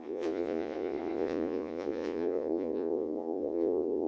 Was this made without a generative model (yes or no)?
no